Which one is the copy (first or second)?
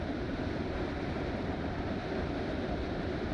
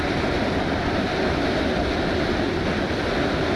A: first